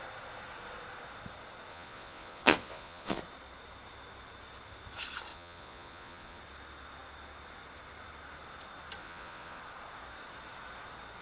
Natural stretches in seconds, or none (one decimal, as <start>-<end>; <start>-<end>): 0.0-1.7; 3.2-5.3; 6.4-9.0; 9.6-11.2